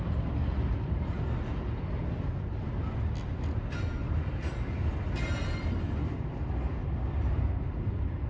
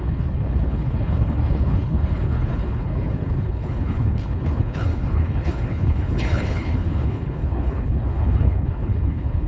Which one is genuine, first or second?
first